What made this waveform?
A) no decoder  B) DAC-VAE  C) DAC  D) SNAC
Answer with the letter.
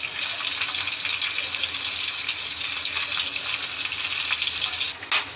A